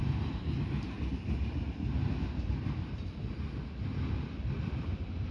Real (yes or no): yes